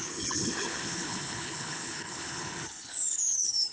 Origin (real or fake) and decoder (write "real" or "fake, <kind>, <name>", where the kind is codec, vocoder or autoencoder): fake, codec, HILCodec